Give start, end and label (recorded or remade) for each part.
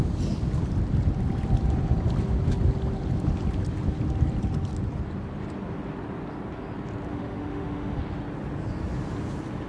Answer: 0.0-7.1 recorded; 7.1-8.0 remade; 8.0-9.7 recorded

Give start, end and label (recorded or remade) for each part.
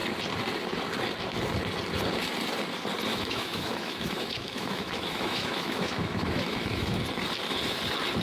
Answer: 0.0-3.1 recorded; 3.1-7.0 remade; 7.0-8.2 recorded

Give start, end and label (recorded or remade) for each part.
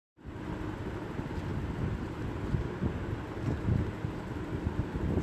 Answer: 0.0-5.2 recorded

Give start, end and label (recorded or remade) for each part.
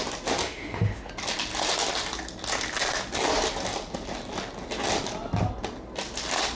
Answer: 0.0-0.4 recorded; 0.4-1.1 remade; 1.1-6.5 recorded